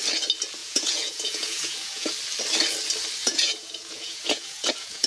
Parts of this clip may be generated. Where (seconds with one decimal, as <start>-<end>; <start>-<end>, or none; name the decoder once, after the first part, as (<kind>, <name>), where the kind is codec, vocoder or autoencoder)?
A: 0.6-2.1 (vocoder, Vocos); 3.2-5.1